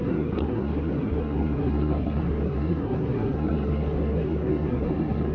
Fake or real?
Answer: fake